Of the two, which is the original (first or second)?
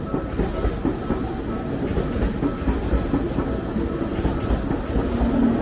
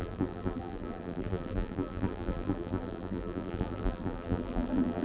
first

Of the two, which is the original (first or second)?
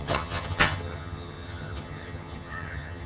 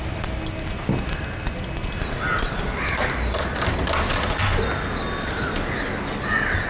second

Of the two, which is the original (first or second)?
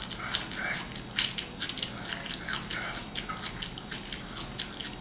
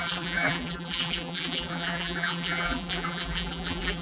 first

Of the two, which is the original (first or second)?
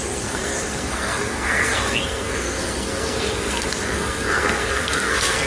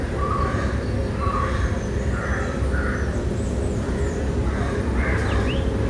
second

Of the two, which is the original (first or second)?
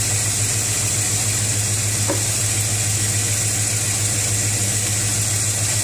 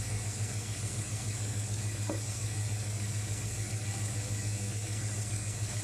first